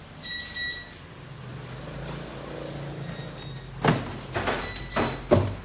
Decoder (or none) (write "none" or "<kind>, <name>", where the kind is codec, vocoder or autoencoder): none